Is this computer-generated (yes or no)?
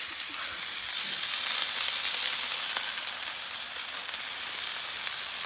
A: no